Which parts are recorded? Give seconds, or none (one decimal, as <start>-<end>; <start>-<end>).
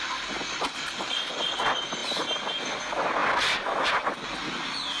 0.0-3.2; 4.6-5.0